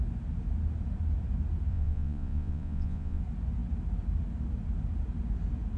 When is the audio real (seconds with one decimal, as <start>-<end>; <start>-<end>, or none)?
0.0-1.7; 3.2-5.8